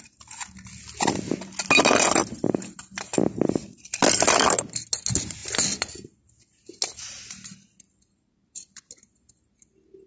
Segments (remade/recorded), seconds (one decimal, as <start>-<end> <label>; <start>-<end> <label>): 0.0-10.1 recorded